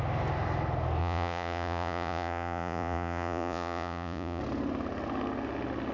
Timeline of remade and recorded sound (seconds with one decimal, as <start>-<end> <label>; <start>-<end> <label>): 0.0-1.0 recorded; 1.0-4.4 remade; 4.4-5.9 recorded